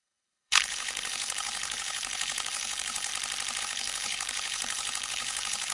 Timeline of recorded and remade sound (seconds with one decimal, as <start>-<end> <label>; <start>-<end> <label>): 0.0-3.1 remade; 3.1-3.6 recorded; 3.6-5.7 remade